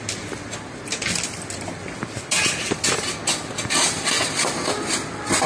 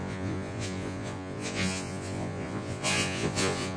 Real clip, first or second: first